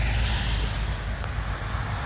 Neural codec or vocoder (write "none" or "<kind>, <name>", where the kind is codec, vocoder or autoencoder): none